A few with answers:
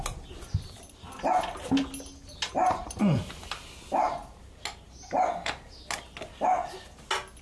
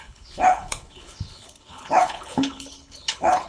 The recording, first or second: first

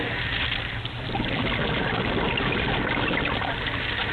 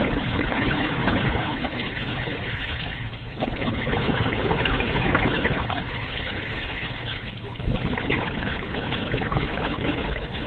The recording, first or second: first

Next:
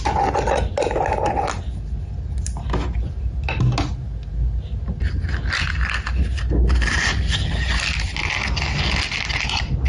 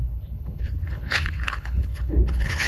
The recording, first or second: first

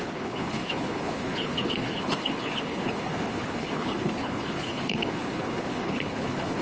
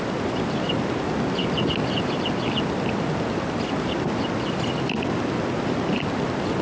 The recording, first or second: second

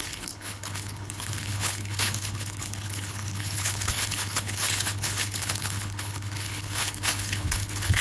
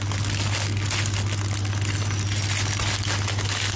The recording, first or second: second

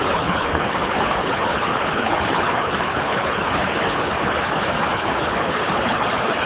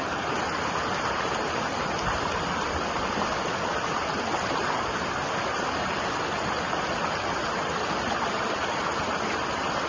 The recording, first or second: second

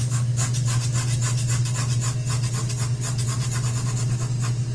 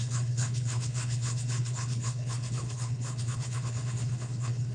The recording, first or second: first